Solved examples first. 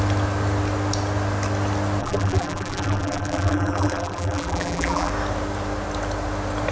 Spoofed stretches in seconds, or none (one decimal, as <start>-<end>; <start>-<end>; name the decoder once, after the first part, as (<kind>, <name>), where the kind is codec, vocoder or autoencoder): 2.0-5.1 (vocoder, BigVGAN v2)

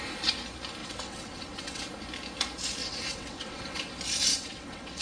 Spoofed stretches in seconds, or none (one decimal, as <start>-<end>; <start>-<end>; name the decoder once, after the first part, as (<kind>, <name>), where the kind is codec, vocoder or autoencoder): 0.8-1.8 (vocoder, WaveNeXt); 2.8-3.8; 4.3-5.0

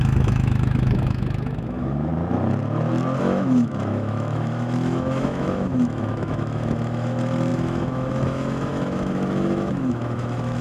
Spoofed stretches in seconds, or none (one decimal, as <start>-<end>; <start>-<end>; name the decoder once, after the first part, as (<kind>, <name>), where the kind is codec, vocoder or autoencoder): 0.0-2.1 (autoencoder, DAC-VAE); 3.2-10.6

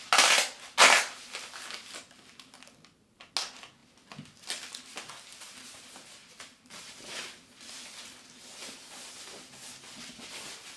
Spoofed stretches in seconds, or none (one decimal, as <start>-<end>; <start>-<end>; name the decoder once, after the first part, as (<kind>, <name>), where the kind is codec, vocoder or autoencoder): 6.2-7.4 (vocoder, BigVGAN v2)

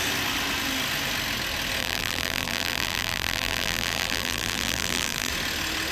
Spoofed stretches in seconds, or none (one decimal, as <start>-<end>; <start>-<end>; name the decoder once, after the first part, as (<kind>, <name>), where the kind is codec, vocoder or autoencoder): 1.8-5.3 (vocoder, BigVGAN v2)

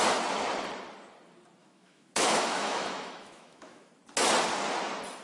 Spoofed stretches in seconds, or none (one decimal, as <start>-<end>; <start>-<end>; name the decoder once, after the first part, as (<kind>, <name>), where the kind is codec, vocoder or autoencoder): 1.6-3.9 (autoencoder, DAC-VAE)

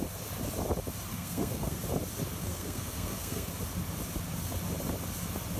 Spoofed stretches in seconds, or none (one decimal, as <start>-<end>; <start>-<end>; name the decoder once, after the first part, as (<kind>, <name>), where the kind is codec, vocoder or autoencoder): 1.1-1.8 (codec, SNAC); 2.4-3.5